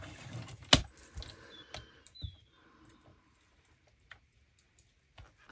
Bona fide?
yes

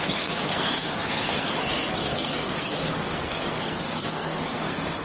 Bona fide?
no